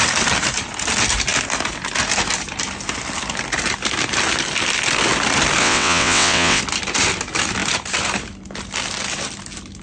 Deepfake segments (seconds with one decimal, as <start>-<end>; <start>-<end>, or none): 5.6-6.6